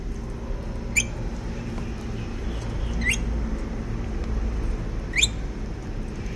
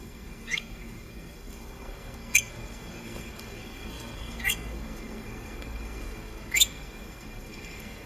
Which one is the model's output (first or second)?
second